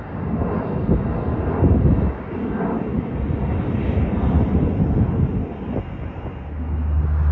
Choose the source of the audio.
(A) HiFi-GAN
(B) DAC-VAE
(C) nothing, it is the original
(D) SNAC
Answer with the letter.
C